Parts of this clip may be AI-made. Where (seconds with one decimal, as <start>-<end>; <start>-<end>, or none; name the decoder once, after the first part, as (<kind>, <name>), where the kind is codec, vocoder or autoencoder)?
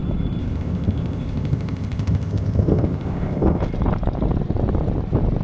0.4-3.6 (codec, ZipCodec)